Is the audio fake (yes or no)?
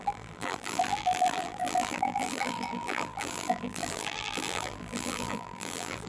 yes